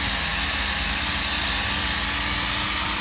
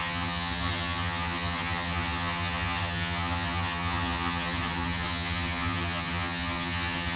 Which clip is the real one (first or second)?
first